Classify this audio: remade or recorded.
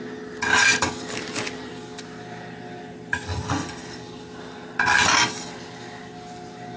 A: recorded